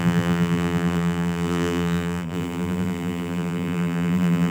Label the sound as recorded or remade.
remade